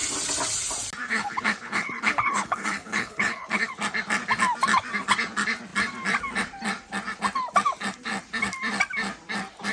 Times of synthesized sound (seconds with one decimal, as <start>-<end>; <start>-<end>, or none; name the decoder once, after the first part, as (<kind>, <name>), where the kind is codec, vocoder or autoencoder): 1.0-3.7 (codec, HILCodec)